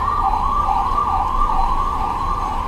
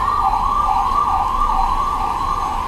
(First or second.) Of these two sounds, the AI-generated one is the first